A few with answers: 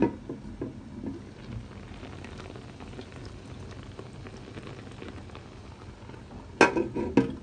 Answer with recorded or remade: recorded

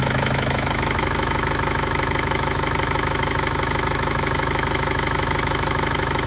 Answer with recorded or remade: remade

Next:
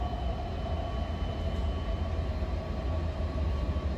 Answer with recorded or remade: recorded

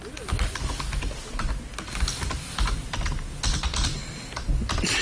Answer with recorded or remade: recorded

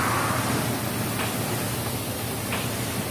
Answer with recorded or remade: recorded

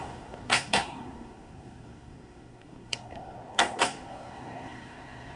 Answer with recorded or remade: remade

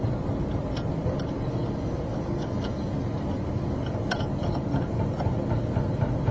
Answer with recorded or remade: recorded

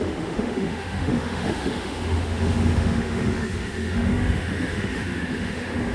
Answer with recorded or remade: remade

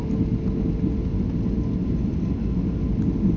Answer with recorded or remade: recorded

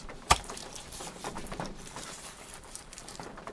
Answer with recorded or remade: remade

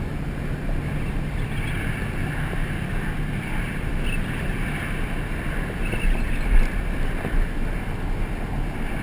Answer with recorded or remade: recorded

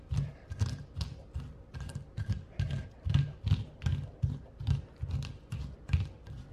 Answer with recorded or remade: recorded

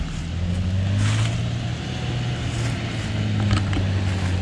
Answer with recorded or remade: recorded